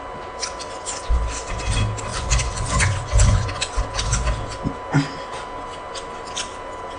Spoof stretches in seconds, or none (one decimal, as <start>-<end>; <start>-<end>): 2.1-3.7